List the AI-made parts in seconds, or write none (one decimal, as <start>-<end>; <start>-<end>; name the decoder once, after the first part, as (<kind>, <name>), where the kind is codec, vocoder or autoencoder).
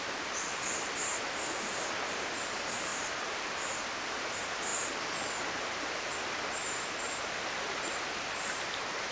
2.9-3.5 (vocoder, BigVGAN v2)